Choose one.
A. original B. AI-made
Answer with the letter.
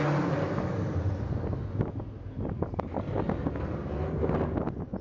A